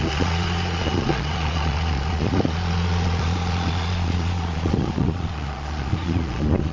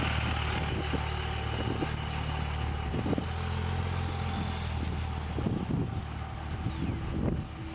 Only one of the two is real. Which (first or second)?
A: second